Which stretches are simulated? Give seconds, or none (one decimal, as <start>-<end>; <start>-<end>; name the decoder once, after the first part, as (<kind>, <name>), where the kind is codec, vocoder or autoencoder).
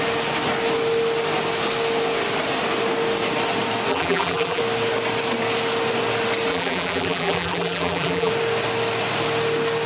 3.9-4.6 (vocoder, BigVGAN v2); 6.5-8.3